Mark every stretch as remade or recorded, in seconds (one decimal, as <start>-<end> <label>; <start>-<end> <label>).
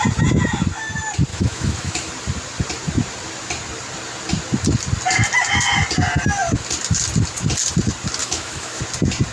0.0-1.3 recorded; 1.3-2.1 remade; 2.1-8.2 recorded; 8.2-8.8 remade; 8.8-9.3 recorded